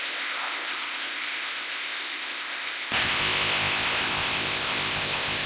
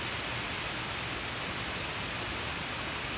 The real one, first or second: second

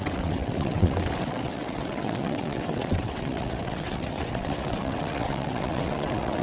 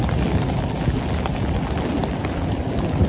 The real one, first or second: second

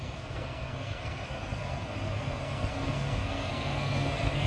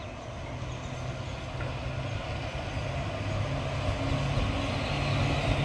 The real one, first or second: second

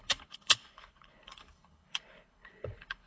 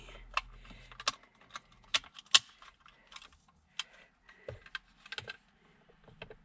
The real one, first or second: second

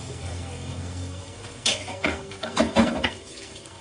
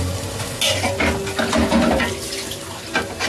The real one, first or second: second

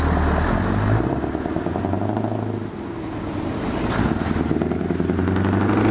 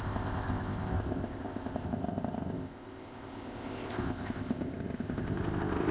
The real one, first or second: first